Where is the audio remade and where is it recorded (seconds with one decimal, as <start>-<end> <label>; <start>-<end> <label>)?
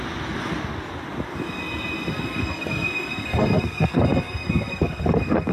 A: 0.0-2.1 recorded; 2.1-5.5 remade